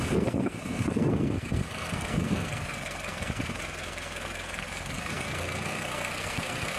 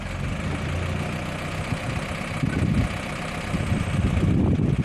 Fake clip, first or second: first